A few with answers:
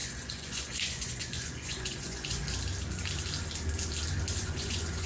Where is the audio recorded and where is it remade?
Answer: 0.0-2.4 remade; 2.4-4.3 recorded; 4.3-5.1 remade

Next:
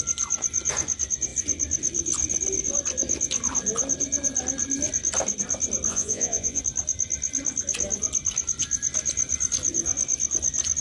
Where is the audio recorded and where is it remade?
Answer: 0.0-5.9 recorded; 5.9-6.6 remade; 6.6-10.8 recorded

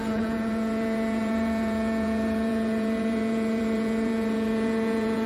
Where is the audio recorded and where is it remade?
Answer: 0.0-5.3 remade